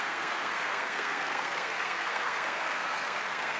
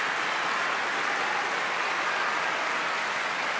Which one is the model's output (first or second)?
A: first